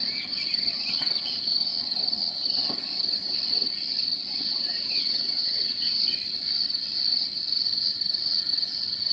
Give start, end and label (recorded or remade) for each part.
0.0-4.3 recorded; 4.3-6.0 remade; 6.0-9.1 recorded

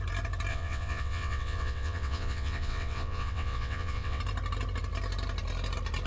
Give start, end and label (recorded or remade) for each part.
0.0-0.5 recorded; 0.5-4.2 remade; 4.2-6.1 recorded

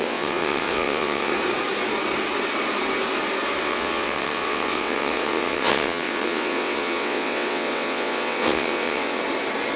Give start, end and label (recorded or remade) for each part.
0.0-1.3 remade; 1.3-3.6 recorded; 3.6-9.2 remade; 9.2-9.8 recorded

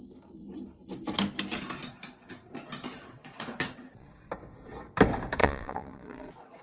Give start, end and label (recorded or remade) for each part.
0.0-2.9 recorded; 2.9-4.2 remade; 4.2-5.4 recorded; 5.4-6.6 remade

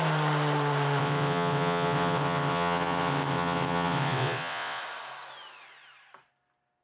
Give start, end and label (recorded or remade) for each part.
0.0-1.0 recorded; 1.0-4.8 remade; 4.8-6.8 recorded